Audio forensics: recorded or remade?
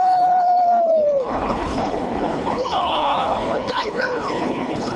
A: remade